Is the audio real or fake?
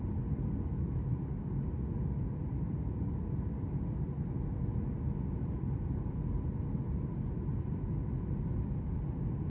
real